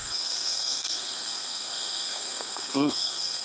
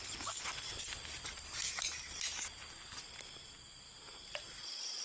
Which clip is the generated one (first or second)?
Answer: first